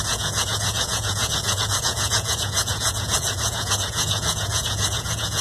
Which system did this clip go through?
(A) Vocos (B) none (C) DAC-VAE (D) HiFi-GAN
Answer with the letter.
A